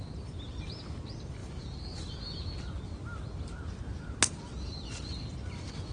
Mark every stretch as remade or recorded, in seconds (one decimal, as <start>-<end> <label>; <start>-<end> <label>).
0.0-5.9 recorded